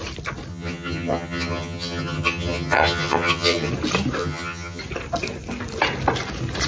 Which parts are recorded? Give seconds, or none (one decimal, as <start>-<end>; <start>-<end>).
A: 0.0-0.5; 3.7-4.2; 4.8-6.7

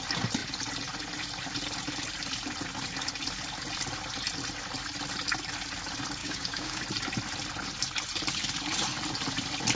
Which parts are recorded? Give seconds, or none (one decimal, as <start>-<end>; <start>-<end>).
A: 0.0-6.2; 6.8-9.8

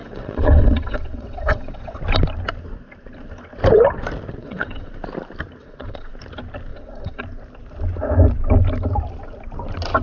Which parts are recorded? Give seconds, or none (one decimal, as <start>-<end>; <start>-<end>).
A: 2.0-4.4; 4.9-5.6; 6.1-6.7; 7.2-10.0

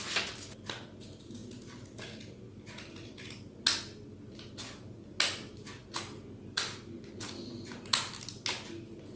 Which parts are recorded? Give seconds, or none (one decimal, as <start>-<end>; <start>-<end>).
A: 0.0-9.2

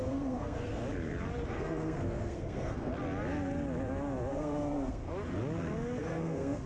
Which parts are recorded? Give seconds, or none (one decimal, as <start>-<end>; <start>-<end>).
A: 0.8-1.5; 2.9-4.3; 5.1-6.0

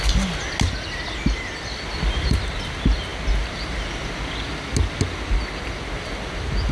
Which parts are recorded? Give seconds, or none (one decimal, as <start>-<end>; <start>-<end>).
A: 0.0-6.7

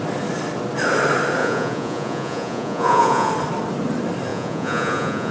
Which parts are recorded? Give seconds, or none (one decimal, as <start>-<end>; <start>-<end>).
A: 0.0-1.4; 3.3-4.3